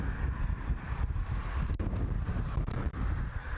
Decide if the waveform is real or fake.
real